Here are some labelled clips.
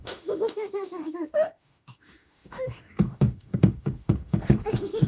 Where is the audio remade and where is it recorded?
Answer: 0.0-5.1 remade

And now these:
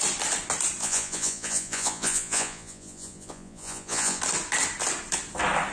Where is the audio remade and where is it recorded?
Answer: 0.0-0.8 recorded; 0.8-4.2 remade; 4.2-5.7 recorded